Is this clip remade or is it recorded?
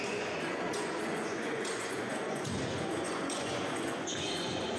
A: remade